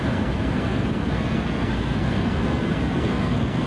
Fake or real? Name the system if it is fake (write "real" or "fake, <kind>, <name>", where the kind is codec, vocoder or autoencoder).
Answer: fake, codec, SNAC